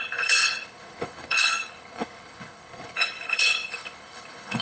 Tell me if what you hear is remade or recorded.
remade